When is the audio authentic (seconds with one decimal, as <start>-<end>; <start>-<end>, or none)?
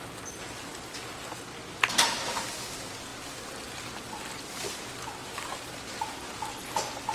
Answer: 0.0-5.2; 6.5-7.1